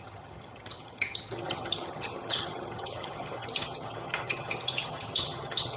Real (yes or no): no